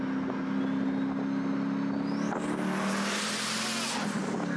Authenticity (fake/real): real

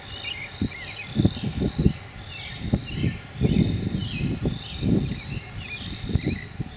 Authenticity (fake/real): real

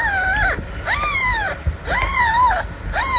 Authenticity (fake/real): real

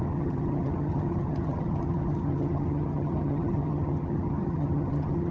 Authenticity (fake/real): fake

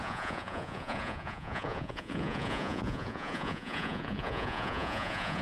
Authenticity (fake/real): fake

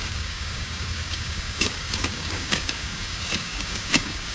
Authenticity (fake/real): fake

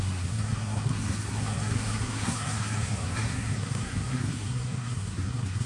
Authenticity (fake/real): fake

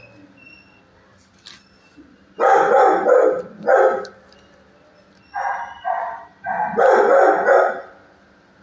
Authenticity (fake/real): real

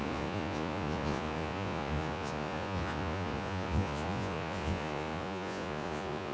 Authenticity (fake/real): fake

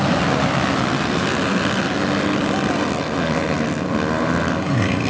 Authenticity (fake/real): real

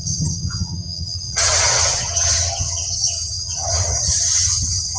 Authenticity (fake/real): fake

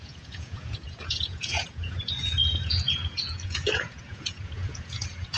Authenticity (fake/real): fake